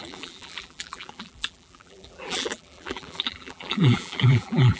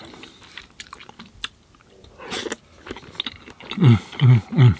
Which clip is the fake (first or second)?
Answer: first